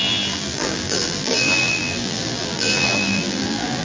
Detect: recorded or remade remade